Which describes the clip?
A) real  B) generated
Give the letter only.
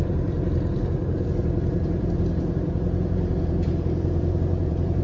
B